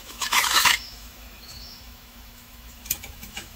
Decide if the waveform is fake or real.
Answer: fake